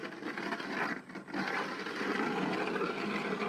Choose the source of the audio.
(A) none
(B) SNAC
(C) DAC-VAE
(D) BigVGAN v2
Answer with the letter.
A